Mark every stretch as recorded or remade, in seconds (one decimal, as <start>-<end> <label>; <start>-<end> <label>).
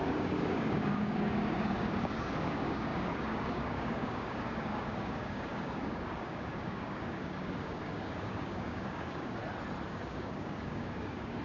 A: 0.0-9.4 remade; 9.4-9.9 recorded; 9.9-11.4 remade